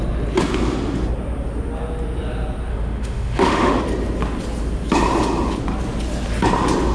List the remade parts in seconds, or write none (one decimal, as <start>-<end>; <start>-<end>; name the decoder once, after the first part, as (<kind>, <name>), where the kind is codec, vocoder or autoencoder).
2.7-3.7 (autoencoder, DAC-VAE)